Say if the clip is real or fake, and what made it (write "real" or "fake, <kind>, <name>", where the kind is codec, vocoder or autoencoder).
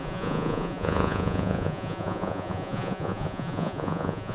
fake, vocoder, Vocos